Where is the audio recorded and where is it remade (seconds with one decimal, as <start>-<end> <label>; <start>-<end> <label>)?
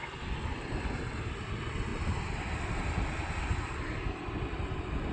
0.0-0.8 remade; 0.8-1.9 recorded; 1.9-5.1 remade